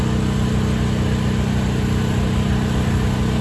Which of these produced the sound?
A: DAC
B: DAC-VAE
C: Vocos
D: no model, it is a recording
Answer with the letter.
D